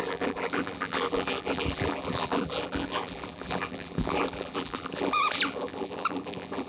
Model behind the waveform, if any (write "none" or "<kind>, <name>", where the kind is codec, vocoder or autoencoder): vocoder, BigVGAN v2